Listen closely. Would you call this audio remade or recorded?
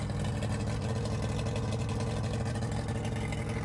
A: recorded